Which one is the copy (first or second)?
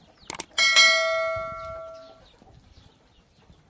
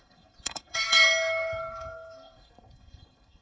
second